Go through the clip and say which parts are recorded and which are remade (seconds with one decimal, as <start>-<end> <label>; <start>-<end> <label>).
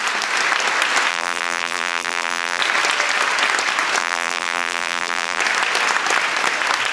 0.0-1.1 recorded; 1.1-2.6 remade; 2.6-4.0 recorded; 4.0-5.4 remade; 5.4-6.9 recorded